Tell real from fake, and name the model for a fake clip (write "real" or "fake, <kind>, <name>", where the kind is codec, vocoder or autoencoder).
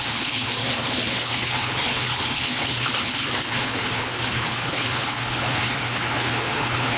fake, codec, HILCodec